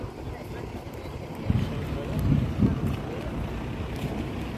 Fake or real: real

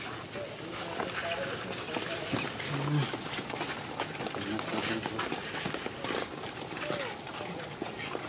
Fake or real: real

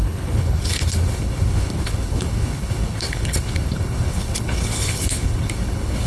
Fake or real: fake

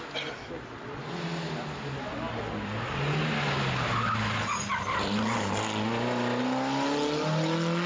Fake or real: real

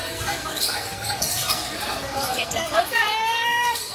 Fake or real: fake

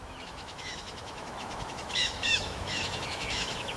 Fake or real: fake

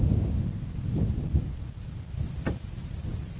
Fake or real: fake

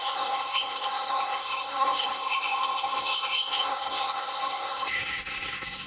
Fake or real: fake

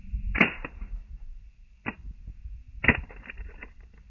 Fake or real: real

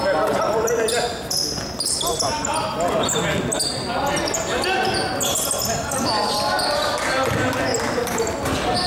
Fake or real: real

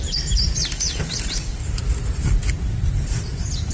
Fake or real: real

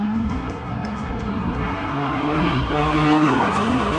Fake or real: fake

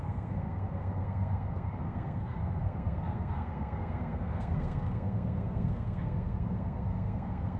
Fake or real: fake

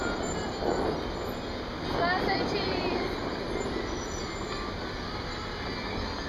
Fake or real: real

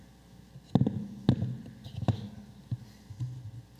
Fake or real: real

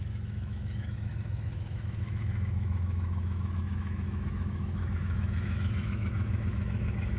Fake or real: fake